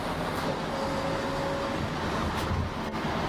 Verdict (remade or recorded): recorded